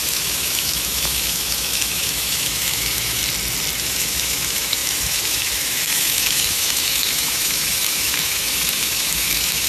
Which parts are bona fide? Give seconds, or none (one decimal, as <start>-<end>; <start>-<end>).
3.2-3.8